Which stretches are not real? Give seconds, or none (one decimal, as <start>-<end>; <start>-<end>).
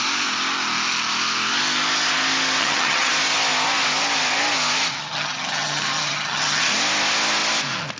2.6-3.1; 4.9-6.7